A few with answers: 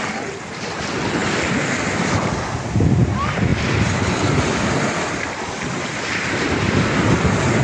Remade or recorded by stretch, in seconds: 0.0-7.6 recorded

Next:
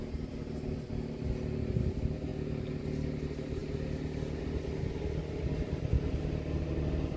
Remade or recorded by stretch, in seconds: 0.0-7.2 recorded

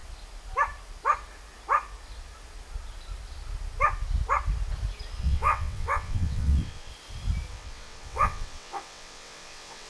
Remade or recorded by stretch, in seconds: 0.0-5.2 recorded; 5.2-6.9 remade; 6.9-7.5 recorded; 7.5-9.9 remade

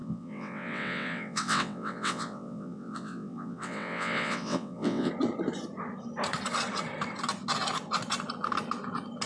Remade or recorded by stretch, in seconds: 0.0-5.1 remade; 5.1-9.3 recorded